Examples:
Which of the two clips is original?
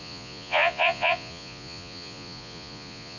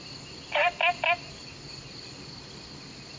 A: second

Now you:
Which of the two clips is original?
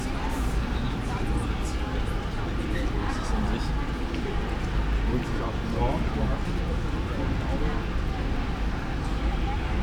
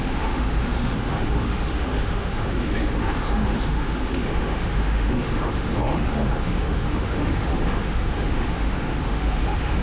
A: first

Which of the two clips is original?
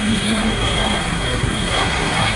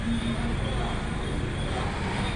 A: second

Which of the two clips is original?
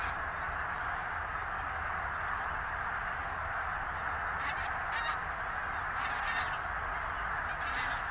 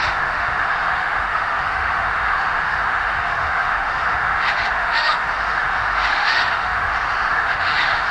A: first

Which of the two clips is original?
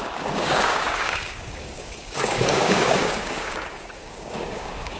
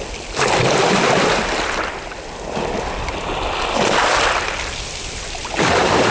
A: second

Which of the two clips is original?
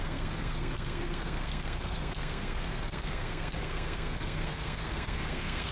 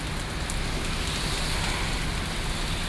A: second